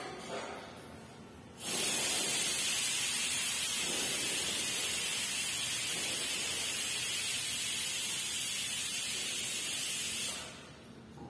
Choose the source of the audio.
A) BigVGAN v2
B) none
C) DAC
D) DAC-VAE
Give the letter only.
B